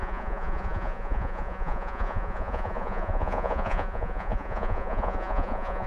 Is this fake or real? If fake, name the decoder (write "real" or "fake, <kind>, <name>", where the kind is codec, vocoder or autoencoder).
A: fake, vocoder, Vocos